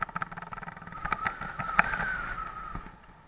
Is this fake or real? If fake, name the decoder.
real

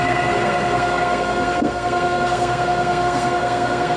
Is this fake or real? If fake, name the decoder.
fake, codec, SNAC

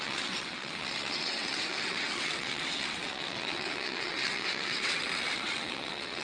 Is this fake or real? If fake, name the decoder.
fake, vocoder, WaveNeXt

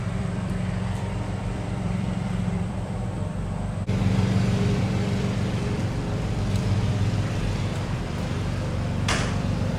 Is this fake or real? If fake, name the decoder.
fake, vocoder, BigVGAN v2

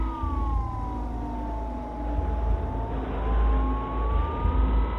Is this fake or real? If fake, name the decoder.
real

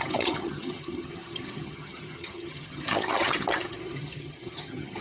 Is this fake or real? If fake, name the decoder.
fake, vocoder, HiFi-GAN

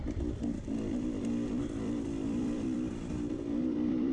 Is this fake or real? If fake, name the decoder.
fake, vocoder, BigVGAN v2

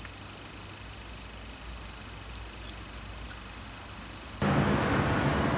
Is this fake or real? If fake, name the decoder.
real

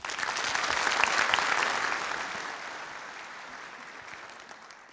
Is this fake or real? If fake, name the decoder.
real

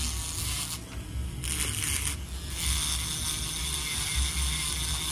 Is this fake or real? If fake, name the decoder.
real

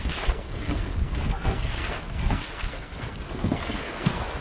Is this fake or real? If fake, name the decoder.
fake, codec, SNAC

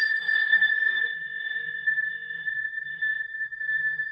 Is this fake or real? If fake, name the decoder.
fake, codec, SNAC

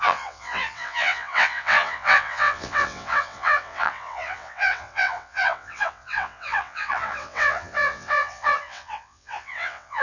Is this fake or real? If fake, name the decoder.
fake, vocoder, WaveNeXt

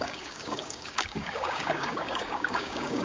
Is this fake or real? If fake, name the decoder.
fake, codec, DAC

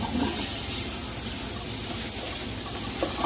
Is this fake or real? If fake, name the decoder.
real